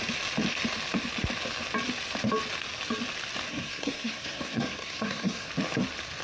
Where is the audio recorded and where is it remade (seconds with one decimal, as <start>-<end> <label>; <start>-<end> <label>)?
0.0-3.5 recorded; 3.5-5.5 remade; 5.5-6.2 recorded